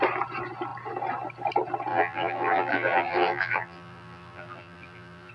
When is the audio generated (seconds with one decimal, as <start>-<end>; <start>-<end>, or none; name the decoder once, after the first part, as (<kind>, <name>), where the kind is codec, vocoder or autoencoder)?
1.9-5.3 (vocoder, BigVGAN v2)